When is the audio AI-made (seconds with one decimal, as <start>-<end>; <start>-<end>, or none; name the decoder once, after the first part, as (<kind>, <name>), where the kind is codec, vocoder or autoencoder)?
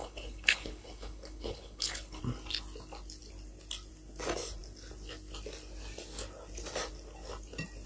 0.0-2.2 (codec, HILCodec)